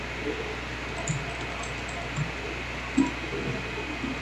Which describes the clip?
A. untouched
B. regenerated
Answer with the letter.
A